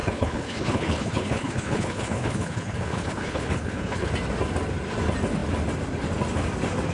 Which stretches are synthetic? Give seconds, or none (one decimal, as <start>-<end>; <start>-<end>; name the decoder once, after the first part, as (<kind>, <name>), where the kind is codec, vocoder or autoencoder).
0.0-4.1 (codec, HILCodec)